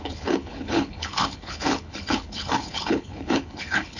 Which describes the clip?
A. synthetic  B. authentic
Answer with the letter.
A